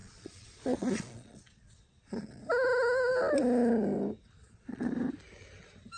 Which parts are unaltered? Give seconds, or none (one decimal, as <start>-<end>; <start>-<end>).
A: 2.4-4.4; 4.9-6.0